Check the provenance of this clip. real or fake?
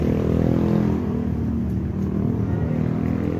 real